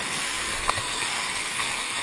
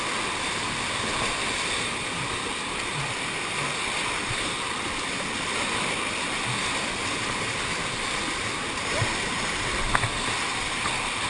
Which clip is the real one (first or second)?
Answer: second